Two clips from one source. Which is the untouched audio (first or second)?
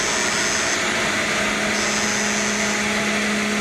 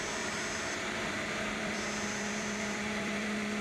first